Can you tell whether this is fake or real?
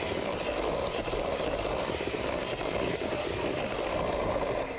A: fake